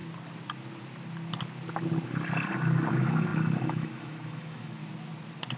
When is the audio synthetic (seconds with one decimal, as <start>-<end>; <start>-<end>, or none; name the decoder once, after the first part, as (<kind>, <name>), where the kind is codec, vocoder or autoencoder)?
2.9-4.8 (autoencoder, DAC-VAE)